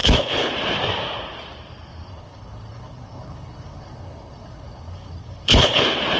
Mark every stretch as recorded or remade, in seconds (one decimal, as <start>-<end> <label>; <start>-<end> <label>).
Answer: 0.0-0.5 remade; 0.5-2.1 recorded; 2.1-5.8 remade; 5.8-6.2 recorded